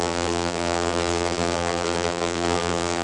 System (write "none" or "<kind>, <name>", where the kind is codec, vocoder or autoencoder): vocoder, BigVGAN v2